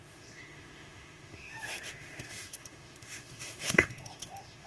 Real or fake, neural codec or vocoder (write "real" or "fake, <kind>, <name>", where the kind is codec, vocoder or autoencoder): fake, autoencoder, DAC-VAE